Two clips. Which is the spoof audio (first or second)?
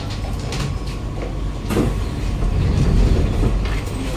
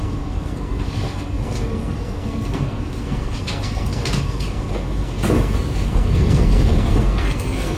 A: second